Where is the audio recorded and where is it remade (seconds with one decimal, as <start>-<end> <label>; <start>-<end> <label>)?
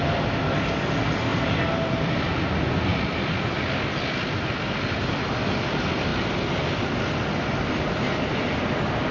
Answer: 0.0-9.1 recorded